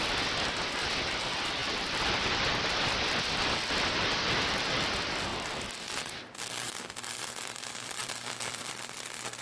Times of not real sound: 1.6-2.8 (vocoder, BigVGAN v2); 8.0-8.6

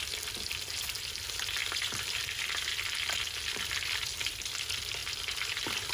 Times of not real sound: 1.6-3.2 (vocoder, BigVGAN v2); 5.0-5.9